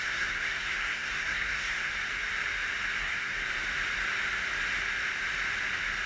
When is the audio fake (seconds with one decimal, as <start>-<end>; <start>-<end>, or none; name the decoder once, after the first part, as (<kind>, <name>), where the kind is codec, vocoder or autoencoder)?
0.0-1.9 (codec, SNAC); 3.0-3.4